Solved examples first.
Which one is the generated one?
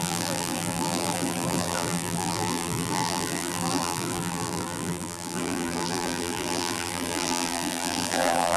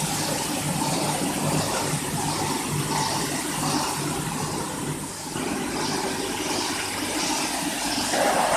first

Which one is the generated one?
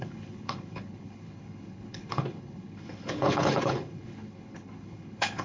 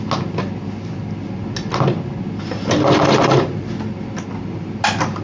first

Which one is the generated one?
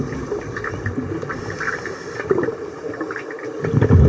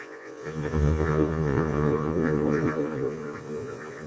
second